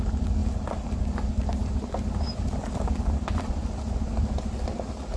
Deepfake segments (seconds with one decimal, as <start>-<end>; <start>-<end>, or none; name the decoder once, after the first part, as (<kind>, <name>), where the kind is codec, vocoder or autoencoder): 0.4-3.5 (vocoder, BigVGAN v2)